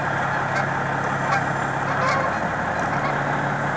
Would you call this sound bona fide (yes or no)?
yes